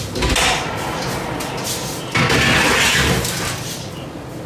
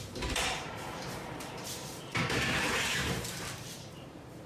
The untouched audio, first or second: first